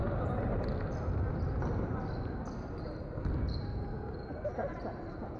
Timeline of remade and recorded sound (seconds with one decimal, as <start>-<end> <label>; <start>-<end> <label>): 0.0-5.4 recorded